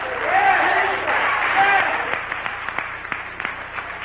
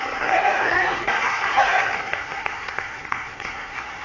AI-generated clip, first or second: second